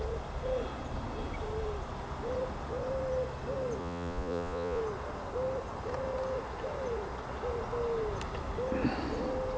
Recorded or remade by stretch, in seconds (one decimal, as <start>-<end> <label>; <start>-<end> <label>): 0.0-3.8 recorded; 3.8-4.8 remade; 4.8-9.6 recorded